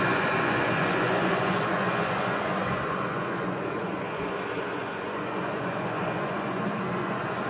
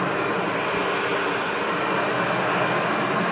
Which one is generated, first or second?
first